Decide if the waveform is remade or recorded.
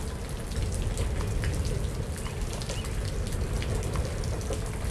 recorded